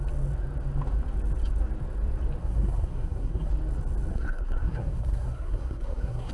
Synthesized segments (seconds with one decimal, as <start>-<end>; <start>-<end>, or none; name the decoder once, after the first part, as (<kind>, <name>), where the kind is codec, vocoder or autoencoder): 2.4-3.5 (codec, SNAC); 4.1-6.3